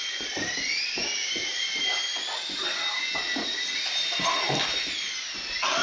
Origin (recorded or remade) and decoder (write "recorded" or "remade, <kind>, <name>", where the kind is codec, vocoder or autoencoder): recorded